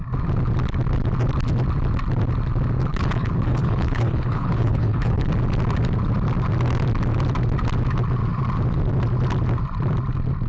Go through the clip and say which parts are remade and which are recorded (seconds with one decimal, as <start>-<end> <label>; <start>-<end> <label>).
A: 0.0-2.9 recorded; 2.9-5.3 remade; 5.3-10.5 recorded